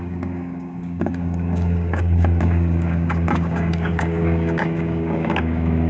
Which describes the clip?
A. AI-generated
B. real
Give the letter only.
A